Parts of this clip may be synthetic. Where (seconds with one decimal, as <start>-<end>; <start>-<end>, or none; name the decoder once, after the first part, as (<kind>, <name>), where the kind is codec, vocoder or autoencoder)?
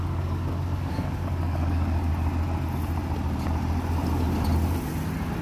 0.0-2.1 (codec, DAC)